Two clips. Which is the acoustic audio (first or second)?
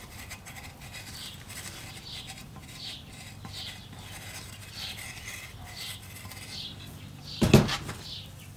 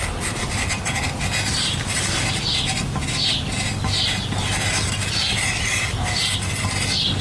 second